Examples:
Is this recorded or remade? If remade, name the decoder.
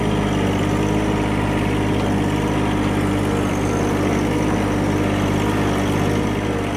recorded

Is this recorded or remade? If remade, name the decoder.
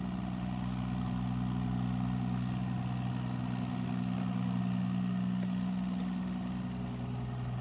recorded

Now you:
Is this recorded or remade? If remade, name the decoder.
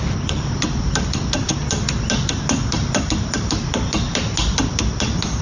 recorded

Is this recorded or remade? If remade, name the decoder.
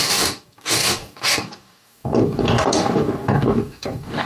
remade, codec, DAC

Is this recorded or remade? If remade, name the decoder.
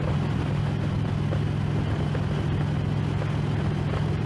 recorded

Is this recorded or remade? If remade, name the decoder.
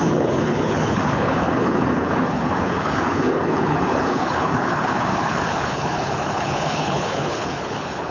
remade, codec, HILCodec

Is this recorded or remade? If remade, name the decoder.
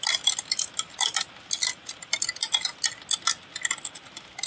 recorded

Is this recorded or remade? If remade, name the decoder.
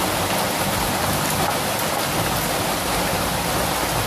recorded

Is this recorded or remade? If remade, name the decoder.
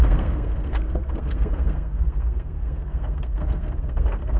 remade, codec, SNAC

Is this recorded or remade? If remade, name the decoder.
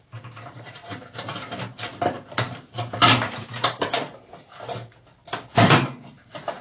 remade, vocoder, BigVGAN v2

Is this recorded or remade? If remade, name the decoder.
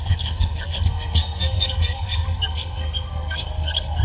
remade, codec, SNAC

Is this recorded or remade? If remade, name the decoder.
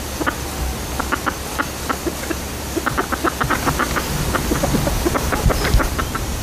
recorded